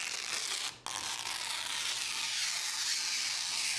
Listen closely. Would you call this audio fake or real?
real